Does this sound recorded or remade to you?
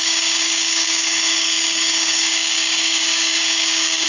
remade